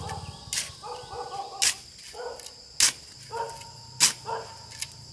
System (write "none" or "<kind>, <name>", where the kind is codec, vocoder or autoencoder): none